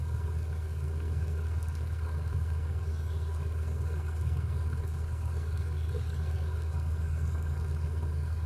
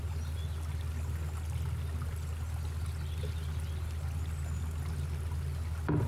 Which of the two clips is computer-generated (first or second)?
first